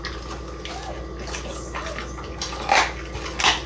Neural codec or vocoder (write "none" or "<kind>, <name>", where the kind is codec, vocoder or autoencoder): none